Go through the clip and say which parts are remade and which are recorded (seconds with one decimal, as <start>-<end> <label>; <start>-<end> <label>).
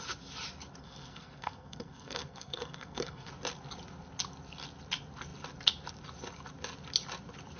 0.0-0.8 recorded; 0.8-3.3 remade; 3.3-7.6 recorded